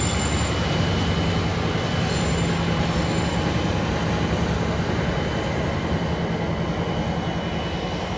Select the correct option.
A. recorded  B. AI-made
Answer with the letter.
A